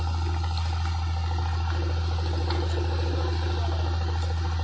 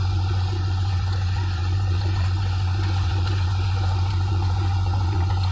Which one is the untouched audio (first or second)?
first